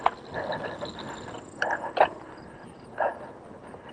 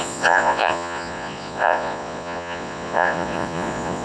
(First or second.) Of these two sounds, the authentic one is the first